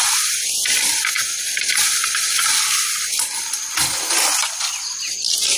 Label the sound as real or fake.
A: fake